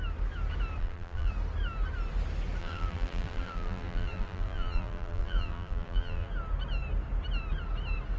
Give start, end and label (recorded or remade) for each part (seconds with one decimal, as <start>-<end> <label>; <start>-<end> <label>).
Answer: 0.0-0.8 recorded; 0.8-1.3 remade; 1.3-2.6 recorded; 2.6-6.3 remade; 6.3-8.2 recorded